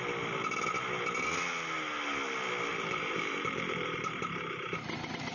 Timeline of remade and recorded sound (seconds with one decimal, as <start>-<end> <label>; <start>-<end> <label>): 0.0-2.7 recorded; 2.7-4.4 remade; 4.4-5.3 recorded